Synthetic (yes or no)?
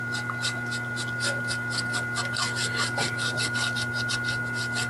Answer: yes